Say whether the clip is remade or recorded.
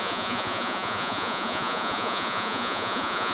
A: remade